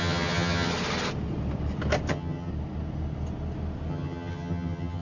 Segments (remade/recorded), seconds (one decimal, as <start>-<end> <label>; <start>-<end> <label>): 0.0-0.7 remade; 0.7-2.1 recorded; 2.1-2.5 remade; 2.5-3.9 recorded; 3.9-5.0 remade